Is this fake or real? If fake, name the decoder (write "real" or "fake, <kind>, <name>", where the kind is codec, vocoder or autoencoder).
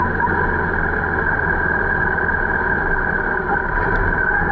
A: real